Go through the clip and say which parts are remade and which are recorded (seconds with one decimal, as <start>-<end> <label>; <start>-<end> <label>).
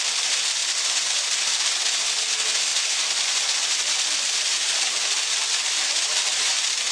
0.0-6.9 recorded